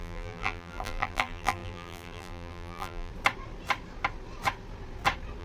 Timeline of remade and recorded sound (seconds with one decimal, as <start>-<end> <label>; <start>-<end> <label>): 0.0-3.1 remade; 3.1-5.4 recorded